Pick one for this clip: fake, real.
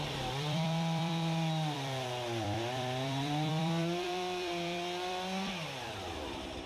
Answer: fake